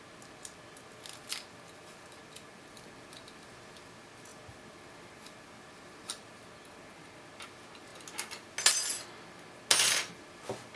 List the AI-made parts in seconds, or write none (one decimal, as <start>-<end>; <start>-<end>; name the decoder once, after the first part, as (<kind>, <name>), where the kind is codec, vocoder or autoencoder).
none